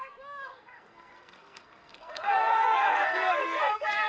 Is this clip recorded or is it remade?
remade